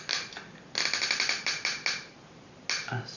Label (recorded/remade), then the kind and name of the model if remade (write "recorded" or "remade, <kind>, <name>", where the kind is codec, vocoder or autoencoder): recorded